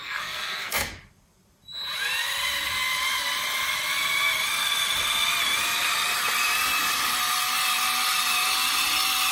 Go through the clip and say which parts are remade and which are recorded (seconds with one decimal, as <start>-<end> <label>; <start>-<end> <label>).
0.0-0.9 remade; 0.9-9.3 recorded